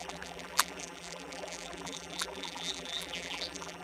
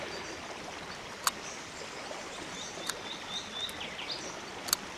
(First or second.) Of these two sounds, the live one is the second